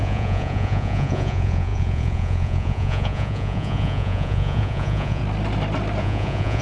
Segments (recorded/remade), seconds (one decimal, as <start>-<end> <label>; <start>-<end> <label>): 0.0-5.2 remade; 5.2-6.0 recorded; 6.0-6.6 remade